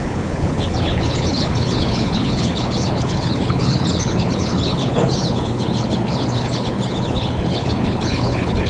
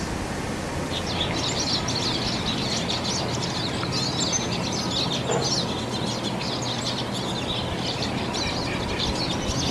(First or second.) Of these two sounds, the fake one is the first